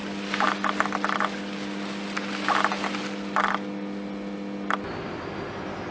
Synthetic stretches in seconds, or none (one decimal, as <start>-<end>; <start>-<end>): none